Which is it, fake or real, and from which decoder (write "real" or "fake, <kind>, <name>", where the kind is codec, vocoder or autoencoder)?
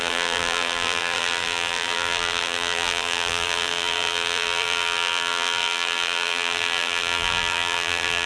fake, vocoder, BigVGAN v2